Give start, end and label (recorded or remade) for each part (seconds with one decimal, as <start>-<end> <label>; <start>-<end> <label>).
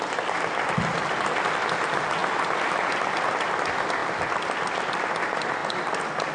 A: 0.0-6.3 recorded